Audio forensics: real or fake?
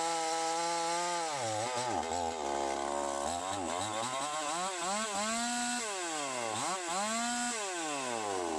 real